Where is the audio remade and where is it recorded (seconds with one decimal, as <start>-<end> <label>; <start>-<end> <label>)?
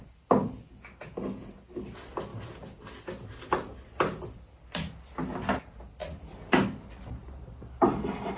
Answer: 0.0-8.4 recorded